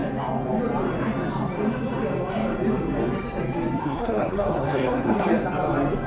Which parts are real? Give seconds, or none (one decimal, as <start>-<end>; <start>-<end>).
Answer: 0.0-3.8; 5.3-6.1